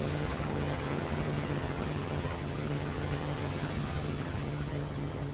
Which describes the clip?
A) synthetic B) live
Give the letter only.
A